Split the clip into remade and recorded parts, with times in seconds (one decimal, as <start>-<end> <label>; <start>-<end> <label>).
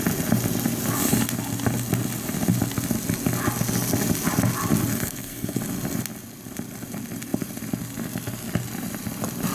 0.0-4.9 recorded; 4.9-5.6 remade; 5.6-9.5 recorded